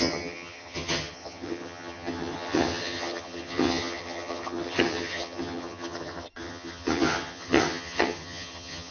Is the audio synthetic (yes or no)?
yes